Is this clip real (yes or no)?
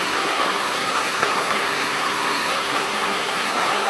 no